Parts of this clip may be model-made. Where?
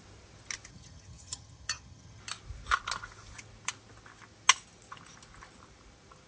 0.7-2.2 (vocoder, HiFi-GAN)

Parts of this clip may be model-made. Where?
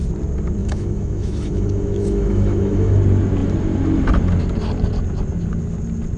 0.6-3.0 (autoencoder, DAC-VAE)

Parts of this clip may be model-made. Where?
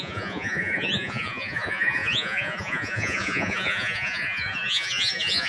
0.0-5.5 (vocoder, Vocos)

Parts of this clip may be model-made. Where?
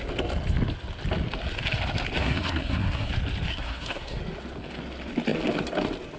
2.2-3.1 (codec, SNAC); 3.5-4.2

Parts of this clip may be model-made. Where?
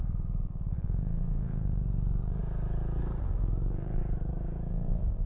0.0-2.4 (vocoder, BigVGAN v2); 3.2-4.0; 4.7-5.3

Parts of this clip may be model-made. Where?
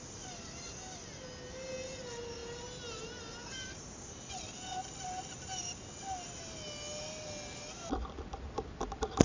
none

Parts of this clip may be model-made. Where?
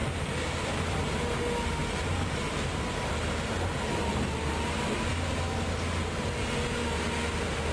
0.0-0.7 (vocoder, BigVGAN v2); 1.8-2.3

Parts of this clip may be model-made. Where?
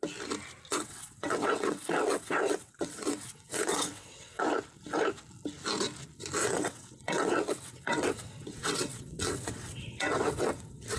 0.7-4.4 (vocoder, WaveNeXt); 6.4-11.0